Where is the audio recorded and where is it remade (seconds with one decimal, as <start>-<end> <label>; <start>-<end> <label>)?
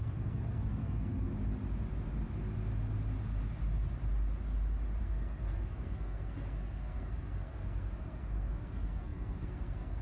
0.0-1.3 remade; 1.3-5.0 recorded; 5.0-10.0 remade